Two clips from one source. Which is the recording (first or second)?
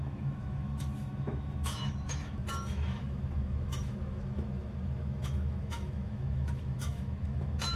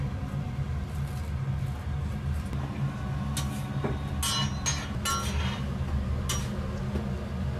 second